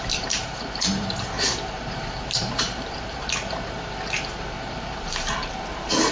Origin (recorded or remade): remade